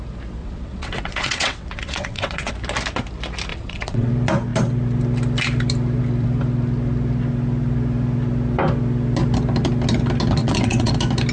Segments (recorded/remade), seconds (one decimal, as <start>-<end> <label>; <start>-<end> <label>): 0.0-0.4 recorded; 0.4-2.5 remade; 2.5-3.5 recorded; 3.5-4.1 remade; 4.1-10.4 recorded; 10.4-10.9 remade; 10.9-11.3 recorded